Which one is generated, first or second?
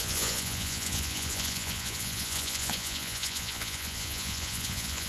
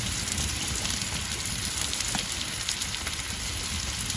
first